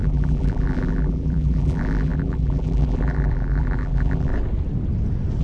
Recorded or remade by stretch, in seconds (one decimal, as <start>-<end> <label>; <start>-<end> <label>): 0.0-4.3 remade; 4.3-5.4 recorded